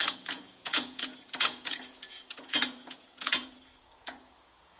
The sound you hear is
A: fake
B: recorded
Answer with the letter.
A